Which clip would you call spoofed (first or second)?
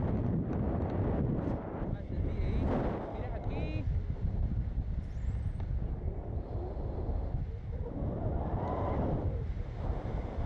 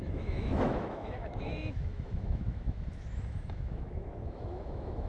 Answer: second